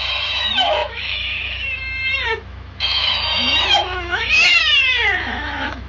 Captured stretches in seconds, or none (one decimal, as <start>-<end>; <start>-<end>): none